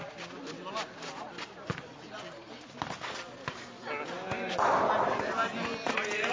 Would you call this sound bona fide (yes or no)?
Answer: yes